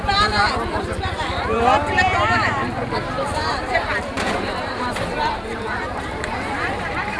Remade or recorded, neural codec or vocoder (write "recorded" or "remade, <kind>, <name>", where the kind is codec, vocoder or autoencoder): remade, vocoder, BigVGAN v2